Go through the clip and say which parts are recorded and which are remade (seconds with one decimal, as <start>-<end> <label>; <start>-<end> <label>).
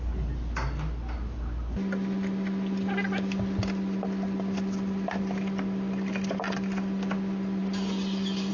0.0-8.5 recorded